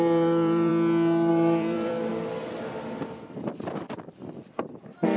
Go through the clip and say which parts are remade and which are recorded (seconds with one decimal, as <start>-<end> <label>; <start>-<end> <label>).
0.0-0.7 remade; 0.7-1.3 recorded; 1.3-2.1 remade; 2.1-5.2 recorded